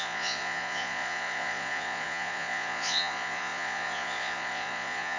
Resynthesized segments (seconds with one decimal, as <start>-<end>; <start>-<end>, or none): 0.0-5.2